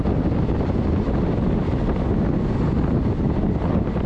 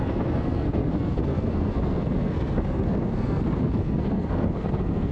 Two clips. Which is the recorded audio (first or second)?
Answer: first